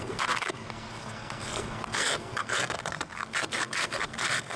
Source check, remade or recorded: remade